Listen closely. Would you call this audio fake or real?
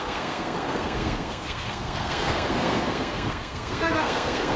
fake